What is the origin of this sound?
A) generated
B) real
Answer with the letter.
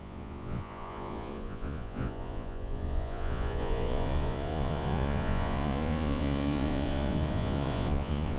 A